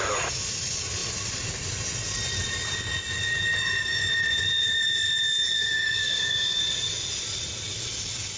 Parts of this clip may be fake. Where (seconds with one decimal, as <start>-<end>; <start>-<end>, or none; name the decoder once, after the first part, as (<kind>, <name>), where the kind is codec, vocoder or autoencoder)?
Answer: 5.6-6.6 (codec, DAC)